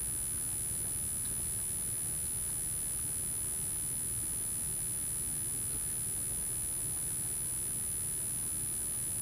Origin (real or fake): real